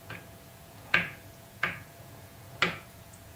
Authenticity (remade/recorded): remade